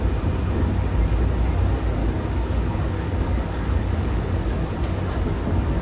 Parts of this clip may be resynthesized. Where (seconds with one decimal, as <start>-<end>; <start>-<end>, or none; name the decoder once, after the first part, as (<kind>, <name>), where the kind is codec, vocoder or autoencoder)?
2.0-4.7 (codec, DAC)